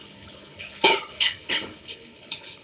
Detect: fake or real fake